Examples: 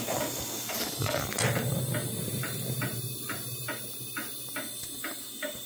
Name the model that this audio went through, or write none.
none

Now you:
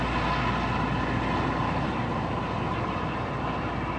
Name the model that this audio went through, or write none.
none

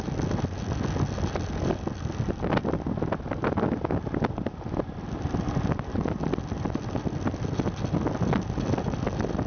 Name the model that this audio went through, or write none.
none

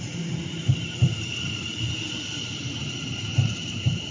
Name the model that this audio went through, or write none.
none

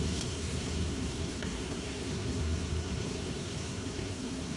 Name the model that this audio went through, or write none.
codec, SNAC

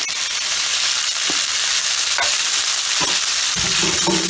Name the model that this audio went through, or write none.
none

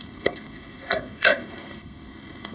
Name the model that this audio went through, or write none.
codec, SNAC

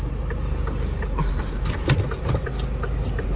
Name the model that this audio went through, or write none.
none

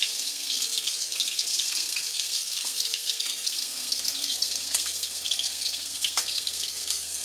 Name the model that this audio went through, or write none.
codec, SNAC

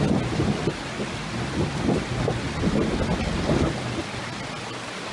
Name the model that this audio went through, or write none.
none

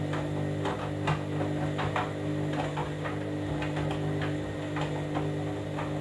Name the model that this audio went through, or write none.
none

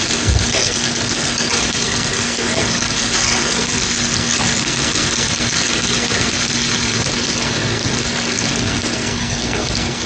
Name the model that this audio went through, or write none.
codec, SNAC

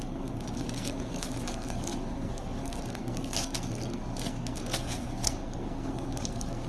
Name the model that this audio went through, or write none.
codec, SNAC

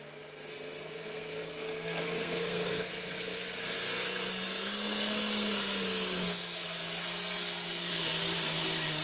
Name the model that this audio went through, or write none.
codec, SNAC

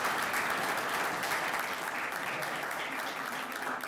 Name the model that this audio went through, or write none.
none